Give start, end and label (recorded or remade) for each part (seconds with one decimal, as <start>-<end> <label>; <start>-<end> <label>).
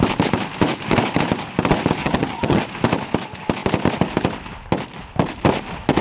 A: 0.0-2.0 recorded; 2.0-2.6 remade; 2.6-6.0 recorded